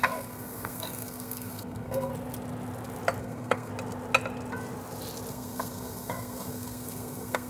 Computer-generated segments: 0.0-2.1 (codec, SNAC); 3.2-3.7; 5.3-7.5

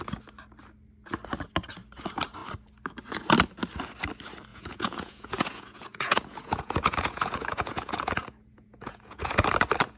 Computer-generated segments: 4.5-9.5 (vocoder, Vocos)

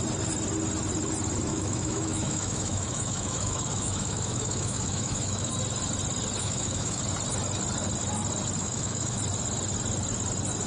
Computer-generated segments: 1.5-5.5 (autoencoder, DAC-VAE); 6.4-7.0; 8.6-9.2

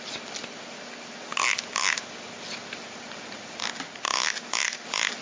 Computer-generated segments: none

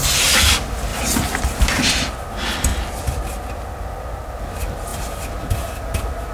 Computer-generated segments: 0.9-1.9 (vocoder, BigVGAN v2)

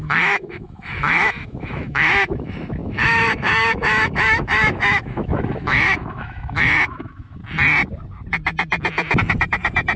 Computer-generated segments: 0.0-7.4 (autoencoder, DAC-VAE)

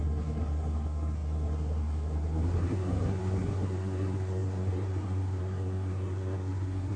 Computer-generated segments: 0.0-7.0 (codec, SNAC)

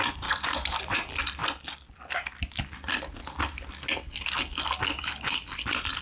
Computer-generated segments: none